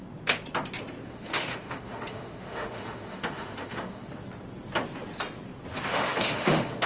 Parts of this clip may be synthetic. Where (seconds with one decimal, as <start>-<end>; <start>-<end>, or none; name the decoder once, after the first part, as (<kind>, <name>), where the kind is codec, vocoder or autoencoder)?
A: 1.1-4.1 (autoencoder, DAC-VAE); 5.9-6.9